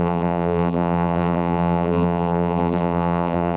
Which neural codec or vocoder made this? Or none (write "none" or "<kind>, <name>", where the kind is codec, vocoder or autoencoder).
vocoder, BigVGAN v2